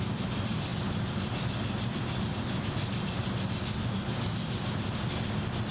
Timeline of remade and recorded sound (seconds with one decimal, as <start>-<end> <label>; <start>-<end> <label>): 0.0-5.7 recorded